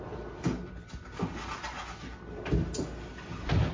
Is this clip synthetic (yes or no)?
no